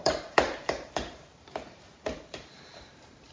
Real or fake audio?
fake